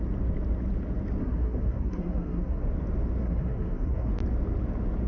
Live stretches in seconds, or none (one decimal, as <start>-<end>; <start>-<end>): 0.0-1.2; 2.7-3.2; 4.1-5.1